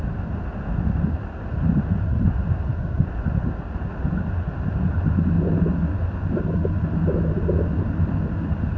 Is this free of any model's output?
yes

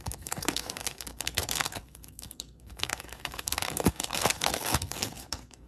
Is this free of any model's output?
no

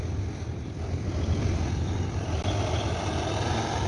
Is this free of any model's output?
yes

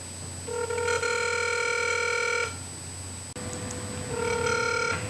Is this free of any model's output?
yes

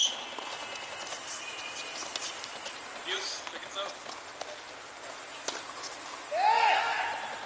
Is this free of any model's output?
yes